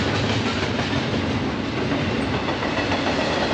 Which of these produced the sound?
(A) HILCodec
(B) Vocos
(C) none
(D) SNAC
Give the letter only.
C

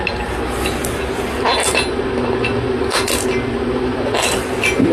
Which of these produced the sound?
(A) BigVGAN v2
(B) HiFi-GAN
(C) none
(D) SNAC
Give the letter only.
C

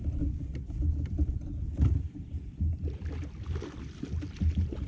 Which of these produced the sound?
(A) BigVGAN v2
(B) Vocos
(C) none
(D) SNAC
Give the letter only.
C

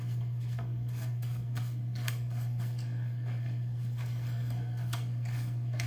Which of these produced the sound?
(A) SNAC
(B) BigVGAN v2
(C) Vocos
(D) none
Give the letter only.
A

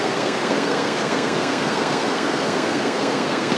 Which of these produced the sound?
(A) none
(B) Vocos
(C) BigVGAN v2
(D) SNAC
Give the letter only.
D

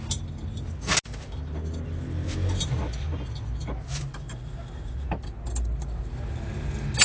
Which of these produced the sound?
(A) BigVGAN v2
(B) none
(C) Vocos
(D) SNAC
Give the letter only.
B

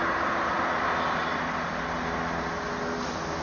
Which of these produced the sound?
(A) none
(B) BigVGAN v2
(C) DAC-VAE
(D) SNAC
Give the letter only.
A